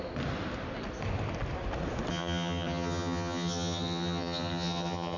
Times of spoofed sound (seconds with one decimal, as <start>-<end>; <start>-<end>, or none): 2.1-5.2